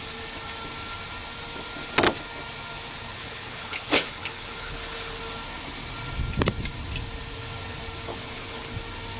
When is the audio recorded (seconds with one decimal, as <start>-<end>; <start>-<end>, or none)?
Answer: 0.0-3.1; 5.2-8.1; 8.7-9.2